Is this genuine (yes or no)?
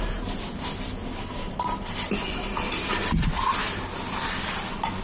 yes